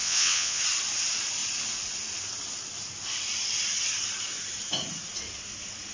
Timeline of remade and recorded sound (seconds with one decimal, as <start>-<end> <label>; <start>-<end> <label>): 0.0-0.6 remade; 0.6-5.9 recorded